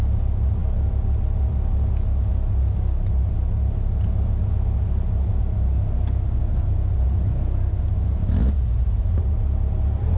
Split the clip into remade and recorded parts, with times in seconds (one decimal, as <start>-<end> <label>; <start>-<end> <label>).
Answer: 0.0-8.2 recorded; 8.2-9.2 remade; 9.2-10.2 recorded